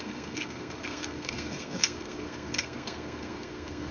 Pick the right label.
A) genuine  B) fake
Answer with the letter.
B